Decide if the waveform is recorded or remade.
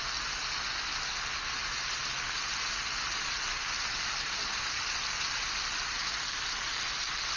recorded